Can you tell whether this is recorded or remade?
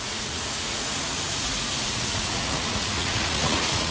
remade